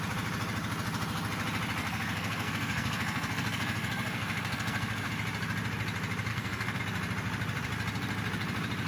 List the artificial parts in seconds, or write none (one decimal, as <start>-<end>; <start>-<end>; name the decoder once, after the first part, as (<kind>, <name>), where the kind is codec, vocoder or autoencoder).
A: 1.8-5.1 (codec, SNAC); 6.3-6.8